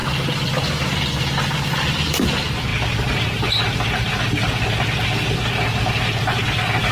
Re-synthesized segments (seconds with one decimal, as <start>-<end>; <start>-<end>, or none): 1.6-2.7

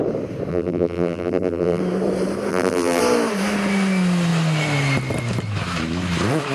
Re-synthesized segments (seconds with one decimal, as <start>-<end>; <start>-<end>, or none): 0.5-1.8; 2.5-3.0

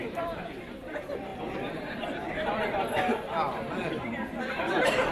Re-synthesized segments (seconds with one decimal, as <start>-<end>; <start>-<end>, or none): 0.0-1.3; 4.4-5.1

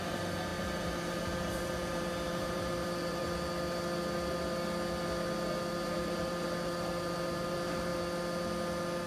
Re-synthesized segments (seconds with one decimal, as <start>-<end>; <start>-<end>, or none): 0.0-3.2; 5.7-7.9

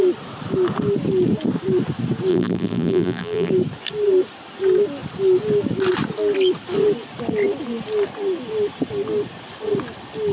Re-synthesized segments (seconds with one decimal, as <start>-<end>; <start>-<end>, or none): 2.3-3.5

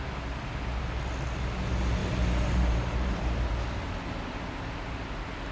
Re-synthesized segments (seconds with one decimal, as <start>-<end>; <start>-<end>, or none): 2.0-3.5

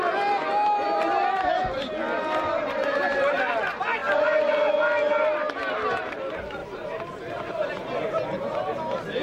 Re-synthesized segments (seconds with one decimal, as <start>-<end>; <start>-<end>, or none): 6.6-7.5

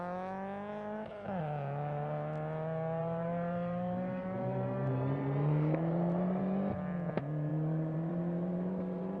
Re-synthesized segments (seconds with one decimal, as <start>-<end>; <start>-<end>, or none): 3.0-6.4; 7.5-9.2